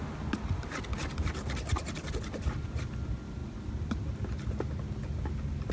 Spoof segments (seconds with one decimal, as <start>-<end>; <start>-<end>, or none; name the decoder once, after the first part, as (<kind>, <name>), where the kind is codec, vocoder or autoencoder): none